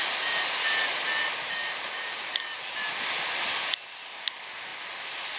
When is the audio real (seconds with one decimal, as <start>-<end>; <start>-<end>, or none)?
0.0-5.4